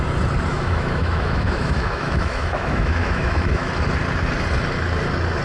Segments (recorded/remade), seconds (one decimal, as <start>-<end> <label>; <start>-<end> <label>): 0.0-0.5 recorded; 0.5-3.7 remade; 3.7-5.4 recorded

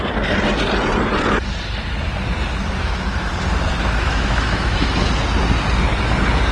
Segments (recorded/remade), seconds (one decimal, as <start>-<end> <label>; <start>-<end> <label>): 0.0-2.8 recorded; 2.8-3.3 remade; 3.3-3.7 recorded; 3.7-4.9 remade; 4.9-6.5 recorded

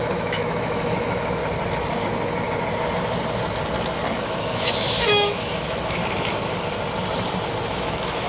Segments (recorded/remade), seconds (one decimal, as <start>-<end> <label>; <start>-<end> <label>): 0.0-1.4 remade; 1.4-4.2 recorded; 4.2-6.0 remade; 6.0-7.7 recorded; 7.7-8.3 remade

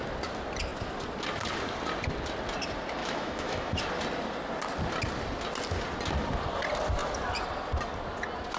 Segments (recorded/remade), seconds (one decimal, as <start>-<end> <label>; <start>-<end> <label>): 0.0-3.0 recorded; 3.0-3.8 remade; 3.8-8.6 recorded

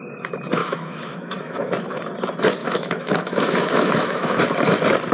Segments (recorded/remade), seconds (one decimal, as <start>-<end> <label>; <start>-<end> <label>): 0.0-0.6 recorded; 0.6-2.0 remade; 2.0-2.6 recorded; 2.6-4.4 remade; 4.4-5.1 recorded